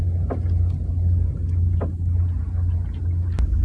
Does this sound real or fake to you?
real